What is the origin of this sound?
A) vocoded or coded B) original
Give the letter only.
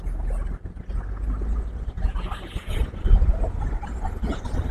B